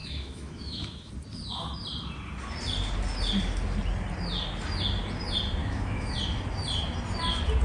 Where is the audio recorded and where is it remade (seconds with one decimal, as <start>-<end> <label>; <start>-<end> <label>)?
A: 0.0-1.1 remade; 1.1-5.6 recorded; 5.6-6.1 remade; 6.1-7.6 recorded